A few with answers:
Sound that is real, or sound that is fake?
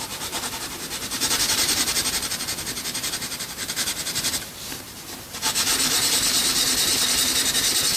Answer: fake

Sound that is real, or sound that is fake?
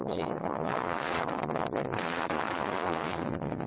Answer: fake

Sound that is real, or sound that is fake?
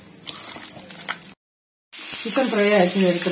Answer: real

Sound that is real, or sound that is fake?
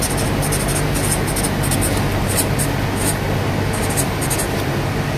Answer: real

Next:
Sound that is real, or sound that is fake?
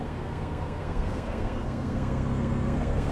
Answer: fake